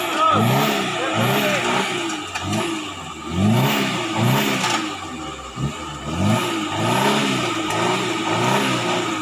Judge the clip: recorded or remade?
recorded